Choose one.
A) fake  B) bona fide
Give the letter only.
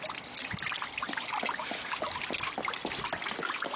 B